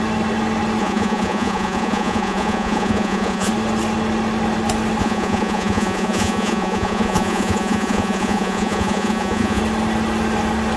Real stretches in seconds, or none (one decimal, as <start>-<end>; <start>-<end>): 0.0-0.8; 3.5-5.0; 9.6-10.8